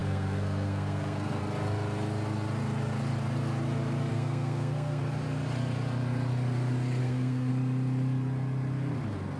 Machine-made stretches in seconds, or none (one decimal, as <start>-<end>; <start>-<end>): 0.0-1.4; 4.1-5.0; 7.0-7.5